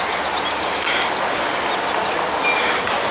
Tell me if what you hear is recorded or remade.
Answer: recorded